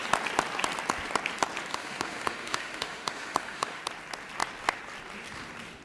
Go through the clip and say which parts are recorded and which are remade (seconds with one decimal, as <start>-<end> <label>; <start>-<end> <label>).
0.0-1.7 recorded; 1.7-3.8 remade; 3.8-5.8 recorded